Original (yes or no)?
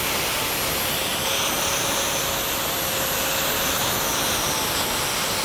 yes